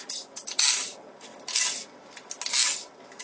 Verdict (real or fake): real